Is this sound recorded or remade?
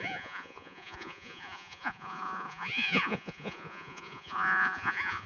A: remade